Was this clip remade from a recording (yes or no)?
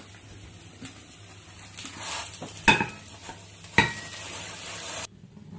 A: no